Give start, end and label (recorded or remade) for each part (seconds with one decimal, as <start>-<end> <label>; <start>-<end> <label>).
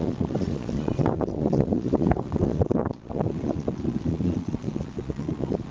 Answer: 0.0-5.7 remade